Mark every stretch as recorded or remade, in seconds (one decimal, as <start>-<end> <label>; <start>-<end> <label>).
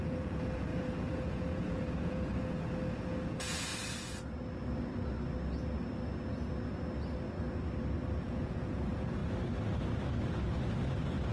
0.0-3.7 remade; 3.7-8.2 recorded; 8.2-9.2 remade; 9.2-11.3 recorded